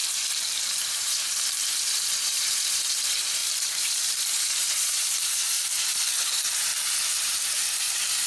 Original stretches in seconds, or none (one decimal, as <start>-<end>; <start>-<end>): 0.0-0.7; 6.7-7.2